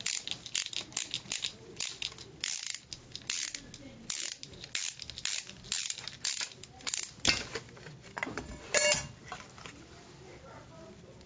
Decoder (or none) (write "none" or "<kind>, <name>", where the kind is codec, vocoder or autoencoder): none